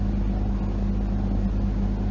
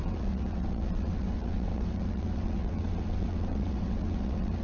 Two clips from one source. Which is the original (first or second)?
first